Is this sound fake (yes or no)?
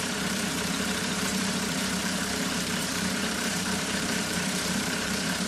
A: yes